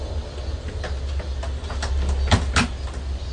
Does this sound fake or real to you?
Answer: real